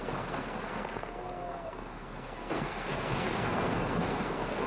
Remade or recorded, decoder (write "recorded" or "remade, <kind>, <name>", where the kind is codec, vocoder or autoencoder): remade, codec, SNAC